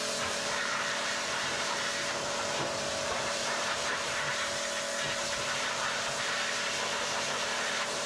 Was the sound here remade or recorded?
remade